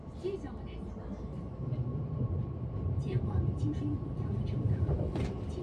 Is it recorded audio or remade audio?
remade